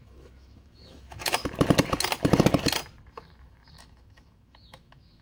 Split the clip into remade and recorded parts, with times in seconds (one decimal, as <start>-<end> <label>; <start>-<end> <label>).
0.0-1.4 remade; 1.4-3.1 recorded; 3.1-5.2 remade